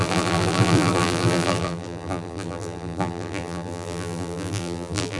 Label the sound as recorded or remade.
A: remade